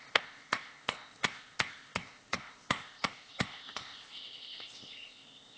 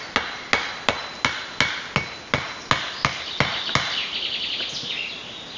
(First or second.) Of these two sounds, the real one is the second